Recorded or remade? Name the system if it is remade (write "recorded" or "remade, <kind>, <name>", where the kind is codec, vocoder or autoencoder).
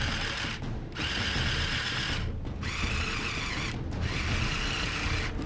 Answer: recorded